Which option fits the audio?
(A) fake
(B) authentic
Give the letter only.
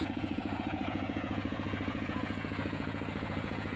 A